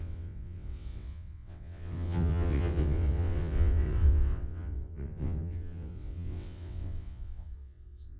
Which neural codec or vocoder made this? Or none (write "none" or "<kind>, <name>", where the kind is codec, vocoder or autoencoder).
vocoder, WaveNeXt